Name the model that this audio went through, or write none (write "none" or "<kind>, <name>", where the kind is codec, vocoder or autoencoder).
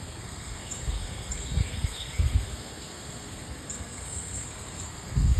codec, SNAC